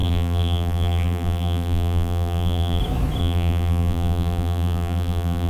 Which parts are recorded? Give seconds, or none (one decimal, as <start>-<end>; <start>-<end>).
2.8-3.2